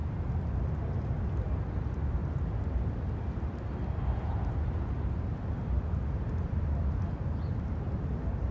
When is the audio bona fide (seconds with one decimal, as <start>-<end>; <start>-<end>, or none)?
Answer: 0.0-8.5